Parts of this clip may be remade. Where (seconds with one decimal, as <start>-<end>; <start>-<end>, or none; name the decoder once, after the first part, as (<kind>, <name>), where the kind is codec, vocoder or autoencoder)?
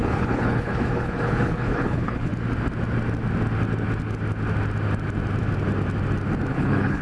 0.0-2.3 (codec, HILCodec); 6.5-7.0